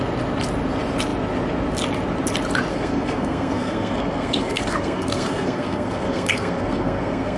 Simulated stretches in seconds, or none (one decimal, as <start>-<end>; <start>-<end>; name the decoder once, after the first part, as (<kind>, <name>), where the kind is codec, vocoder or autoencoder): 2.7-7.4 (codec, SNAC)